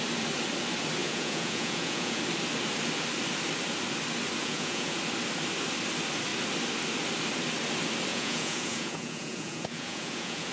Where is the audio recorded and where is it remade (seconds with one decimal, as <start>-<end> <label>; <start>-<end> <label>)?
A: 0.0-1.0 recorded; 1.0-2.2 remade; 2.2-4.4 recorded; 4.4-5.0 remade; 5.0-8.1 recorded; 8.1-10.5 remade

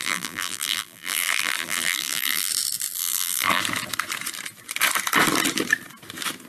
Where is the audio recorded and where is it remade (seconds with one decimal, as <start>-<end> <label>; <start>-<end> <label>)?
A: 0.0-2.5 remade; 2.5-3.0 recorded; 3.0-3.6 remade; 3.6-6.5 recorded

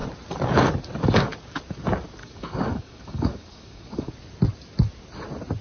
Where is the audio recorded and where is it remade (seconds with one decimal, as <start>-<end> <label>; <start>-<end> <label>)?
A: 0.0-2.2 recorded; 2.2-4.1 remade; 4.1-5.6 recorded

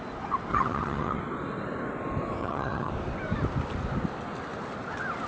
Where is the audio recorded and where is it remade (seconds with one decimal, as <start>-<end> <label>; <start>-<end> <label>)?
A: 0.0-0.5 recorded; 0.5-1.2 remade; 1.2-2.4 recorded; 2.4-2.9 remade; 2.9-5.3 recorded

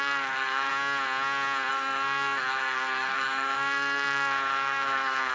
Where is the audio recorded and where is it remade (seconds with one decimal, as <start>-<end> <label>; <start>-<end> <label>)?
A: 0.0-0.7 remade; 0.7-1.7 recorded; 1.7-5.3 remade

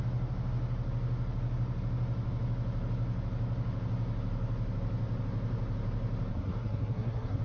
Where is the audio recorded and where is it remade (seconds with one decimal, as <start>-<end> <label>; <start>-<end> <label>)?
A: 0.0-6.3 recorded; 6.3-7.4 remade